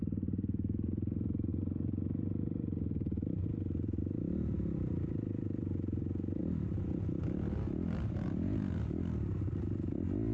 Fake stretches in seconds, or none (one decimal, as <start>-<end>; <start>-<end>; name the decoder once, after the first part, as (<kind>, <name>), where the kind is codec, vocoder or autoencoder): none